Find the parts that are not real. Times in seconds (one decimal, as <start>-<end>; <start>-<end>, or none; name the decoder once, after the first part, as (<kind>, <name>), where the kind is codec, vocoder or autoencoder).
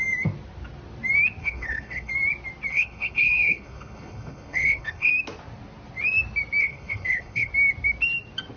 1.4-2.1 (codec, HILCodec); 2.7-5.1; 6.6-7.5